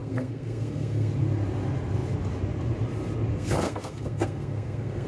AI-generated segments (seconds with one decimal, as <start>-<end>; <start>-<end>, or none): 0.0-1.1; 3.3-5.1

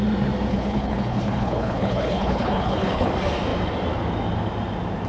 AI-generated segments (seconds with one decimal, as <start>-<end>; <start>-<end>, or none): 0.5-3.1